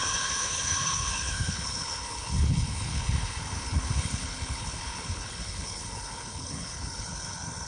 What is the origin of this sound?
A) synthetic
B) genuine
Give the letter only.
A